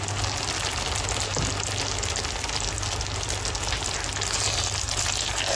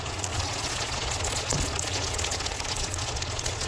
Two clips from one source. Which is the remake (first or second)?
second